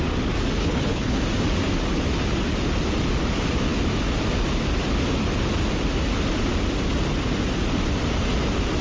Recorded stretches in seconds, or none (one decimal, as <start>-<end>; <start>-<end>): 0.0-0.6; 1.2-8.8